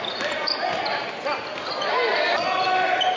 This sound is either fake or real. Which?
real